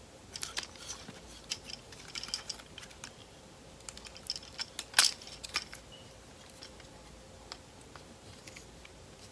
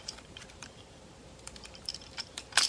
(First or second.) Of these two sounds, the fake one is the second